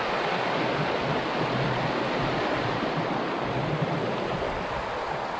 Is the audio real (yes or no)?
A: yes